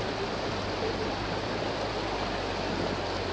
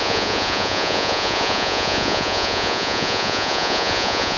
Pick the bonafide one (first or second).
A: first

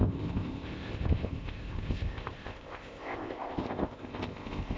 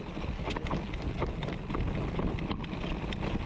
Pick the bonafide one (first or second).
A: second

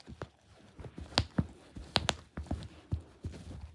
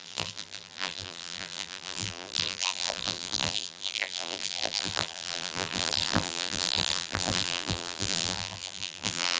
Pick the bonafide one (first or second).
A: first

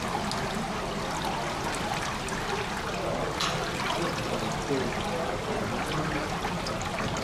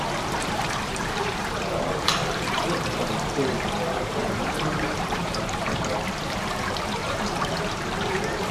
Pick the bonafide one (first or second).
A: first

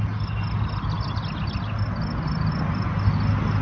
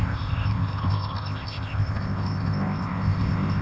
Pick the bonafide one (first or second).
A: first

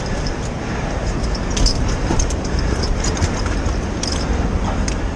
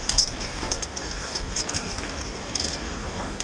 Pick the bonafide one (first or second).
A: first